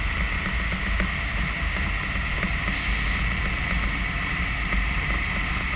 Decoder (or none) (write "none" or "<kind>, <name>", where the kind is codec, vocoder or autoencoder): none